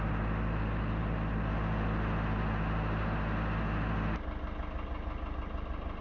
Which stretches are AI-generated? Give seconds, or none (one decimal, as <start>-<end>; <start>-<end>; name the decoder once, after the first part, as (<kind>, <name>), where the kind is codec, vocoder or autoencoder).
none